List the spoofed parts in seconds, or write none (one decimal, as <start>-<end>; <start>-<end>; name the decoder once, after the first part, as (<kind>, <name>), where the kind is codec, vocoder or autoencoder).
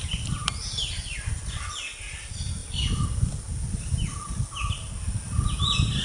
none